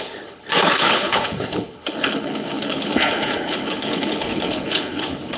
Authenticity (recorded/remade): remade